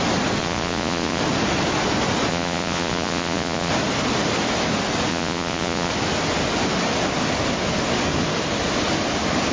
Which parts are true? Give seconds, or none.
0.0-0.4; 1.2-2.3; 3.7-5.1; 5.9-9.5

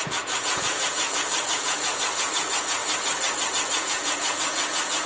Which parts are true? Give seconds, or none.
2.8-3.5